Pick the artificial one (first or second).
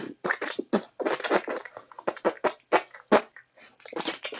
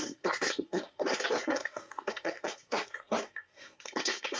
second